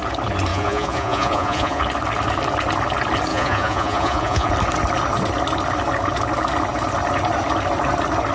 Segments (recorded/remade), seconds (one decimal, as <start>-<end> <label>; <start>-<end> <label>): 0.0-0.5 recorded; 0.5-1.8 remade; 1.8-3.3 recorded; 3.3-4.5 remade; 4.5-8.3 recorded